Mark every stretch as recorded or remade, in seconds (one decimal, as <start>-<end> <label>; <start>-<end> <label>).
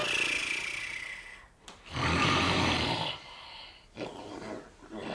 0.0-0.4 recorded; 0.4-3.5 remade; 3.5-5.1 recorded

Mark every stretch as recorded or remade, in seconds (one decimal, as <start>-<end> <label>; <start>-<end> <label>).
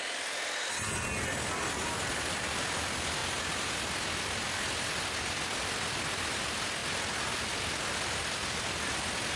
0.0-9.4 recorded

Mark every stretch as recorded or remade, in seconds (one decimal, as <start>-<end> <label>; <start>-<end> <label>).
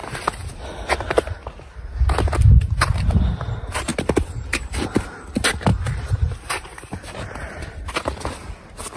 0.0-0.5 remade; 0.5-3.9 recorded; 3.9-5.0 remade; 5.0-5.7 recorded; 5.7-7.4 remade; 7.4-9.0 recorded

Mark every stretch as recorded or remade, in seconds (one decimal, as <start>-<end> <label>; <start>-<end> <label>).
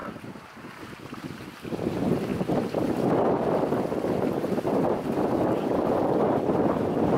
0.0-7.2 recorded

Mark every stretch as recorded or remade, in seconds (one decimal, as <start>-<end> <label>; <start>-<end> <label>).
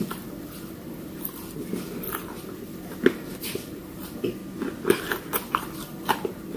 0.0-4.4 remade; 4.4-5.0 recorded; 5.0-6.6 remade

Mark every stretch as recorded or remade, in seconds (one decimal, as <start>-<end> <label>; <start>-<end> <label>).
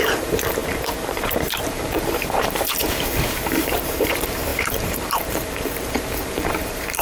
0.0-7.0 remade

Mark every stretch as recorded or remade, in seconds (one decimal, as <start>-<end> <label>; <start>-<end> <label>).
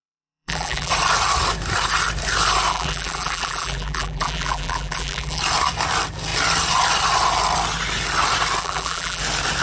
0.0-0.9 remade; 0.9-2.7 recorded; 2.7-5.4 remade; 5.4-8.6 recorded; 8.6-9.2 remade; 9.2-9.6 recorded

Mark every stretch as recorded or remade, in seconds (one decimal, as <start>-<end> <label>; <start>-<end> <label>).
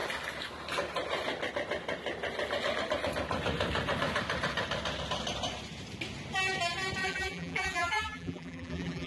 0.0-7.0 recorded; 7.0-9.1 remade